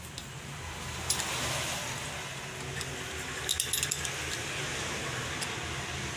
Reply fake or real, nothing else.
real